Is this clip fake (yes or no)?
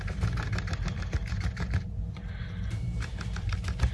yes